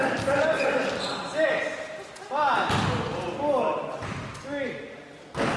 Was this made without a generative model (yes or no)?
yes